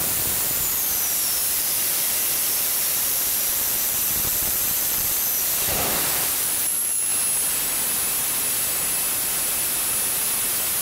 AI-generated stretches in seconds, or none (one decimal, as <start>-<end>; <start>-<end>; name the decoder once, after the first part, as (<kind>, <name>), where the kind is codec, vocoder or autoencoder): 0.0-7.1 (vocoder, BigVGAN v2)